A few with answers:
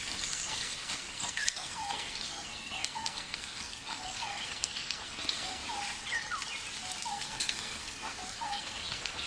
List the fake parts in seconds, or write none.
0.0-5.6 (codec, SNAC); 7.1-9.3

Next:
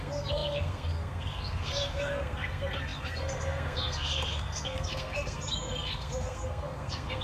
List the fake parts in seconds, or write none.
0.0-7.2 (codec, SNAC)

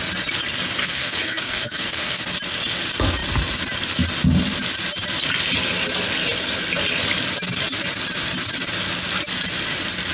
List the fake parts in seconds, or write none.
0.8-2.2 (codec, SNAC)